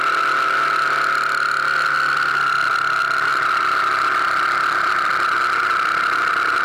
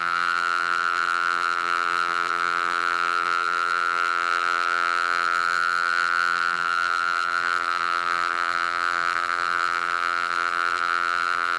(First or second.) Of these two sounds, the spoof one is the second